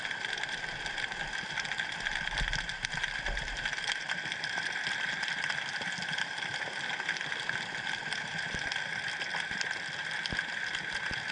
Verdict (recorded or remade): recorded